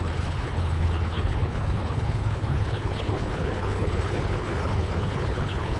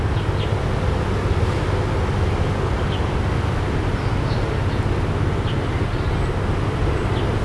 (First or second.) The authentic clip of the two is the second